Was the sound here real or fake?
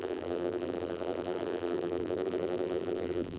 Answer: fake